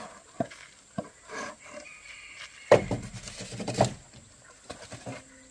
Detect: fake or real real